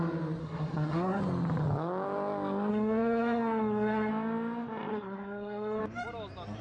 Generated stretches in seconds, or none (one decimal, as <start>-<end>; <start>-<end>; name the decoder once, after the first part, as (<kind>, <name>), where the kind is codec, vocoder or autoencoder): 0.4-1.2 (codec, SNAC); 2.7-4.1; 4.9-5.8